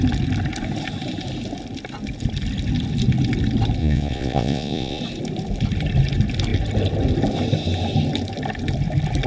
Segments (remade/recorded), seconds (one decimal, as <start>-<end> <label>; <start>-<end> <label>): 0.0-3.8 recorded; 3.8-5.0 remade; 5.0-9.3 recorded